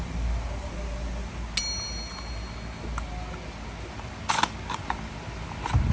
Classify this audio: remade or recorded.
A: recorded